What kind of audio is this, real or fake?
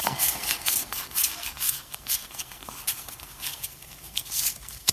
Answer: fake